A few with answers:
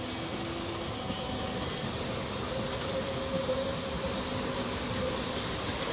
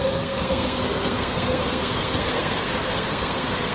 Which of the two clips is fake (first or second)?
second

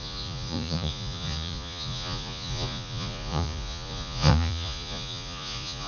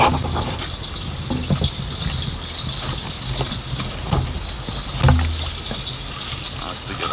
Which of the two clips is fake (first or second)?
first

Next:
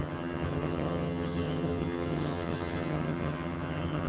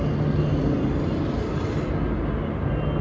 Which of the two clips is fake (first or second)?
first